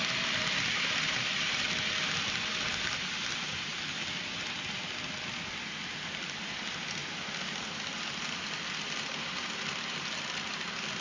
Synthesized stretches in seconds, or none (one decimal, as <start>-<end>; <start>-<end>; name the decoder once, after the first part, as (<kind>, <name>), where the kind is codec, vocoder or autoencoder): none